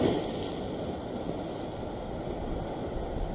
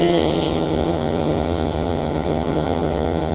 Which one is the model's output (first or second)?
second